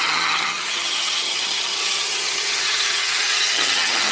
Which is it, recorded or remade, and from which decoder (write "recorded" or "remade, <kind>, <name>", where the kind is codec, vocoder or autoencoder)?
remade, vocoder, HiFi-GAN